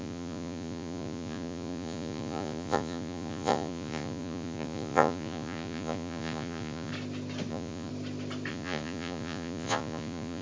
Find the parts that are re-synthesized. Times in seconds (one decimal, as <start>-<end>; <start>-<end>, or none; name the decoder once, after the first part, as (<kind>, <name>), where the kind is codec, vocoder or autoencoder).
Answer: 0.0-6.9 (vocoder, Vocos); 7.5-7.9; 8.5-10.4